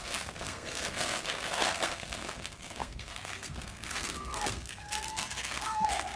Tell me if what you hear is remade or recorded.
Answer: remade